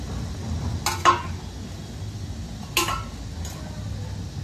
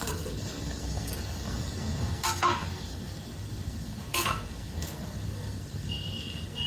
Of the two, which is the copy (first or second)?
second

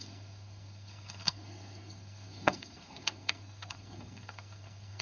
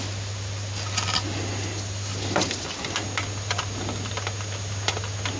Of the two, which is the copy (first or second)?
first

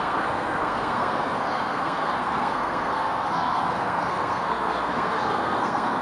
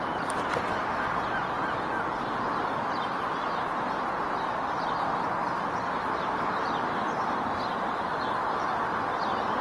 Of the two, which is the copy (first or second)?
first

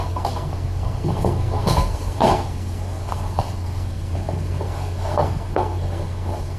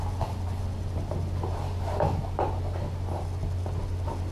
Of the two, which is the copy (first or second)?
first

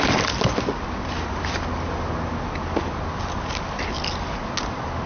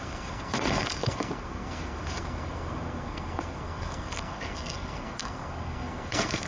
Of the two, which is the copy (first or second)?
second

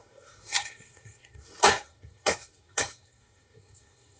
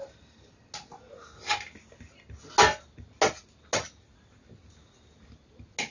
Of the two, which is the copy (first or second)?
first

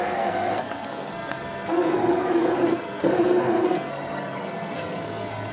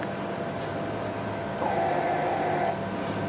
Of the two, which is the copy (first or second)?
first